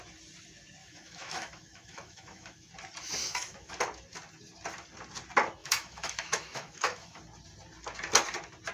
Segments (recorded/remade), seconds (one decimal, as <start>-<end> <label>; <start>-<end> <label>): 0.0-0.8 recorded; 0.8-2.7 remade; 2.7-3.2 recorded; 3.2-3.7 remade; 3.7-5.6 recorded; 5.6-7.2 remade; 7.2-8.7 recorded